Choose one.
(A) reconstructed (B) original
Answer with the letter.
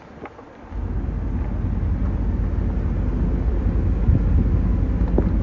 B